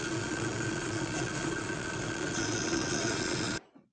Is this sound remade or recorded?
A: remade